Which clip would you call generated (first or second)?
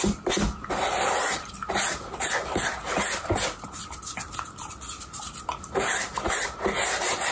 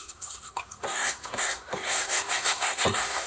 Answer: second